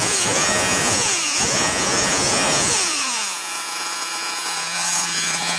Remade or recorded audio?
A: remade